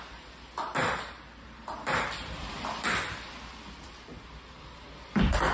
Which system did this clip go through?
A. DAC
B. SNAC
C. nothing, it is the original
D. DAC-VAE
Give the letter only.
C